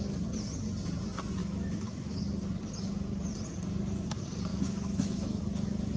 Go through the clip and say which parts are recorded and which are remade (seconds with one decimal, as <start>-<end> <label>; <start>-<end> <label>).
0.0-1.4 recorded; 1.4-2.2 remade; 2.2-4.5 recorded; 4.5-5.4 remade; 5.4-6.0 recorded

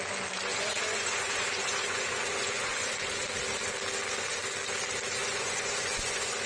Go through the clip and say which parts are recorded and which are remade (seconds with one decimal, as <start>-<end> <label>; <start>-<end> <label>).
0.0-0.5 recorded; 0.5-2.9 remade; 2.9-5.2 recorded; 5.2-6.5 remade